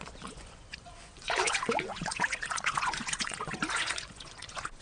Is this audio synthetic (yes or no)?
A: yes